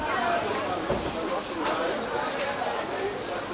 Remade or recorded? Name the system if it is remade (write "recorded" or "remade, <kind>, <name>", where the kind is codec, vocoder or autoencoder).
recorded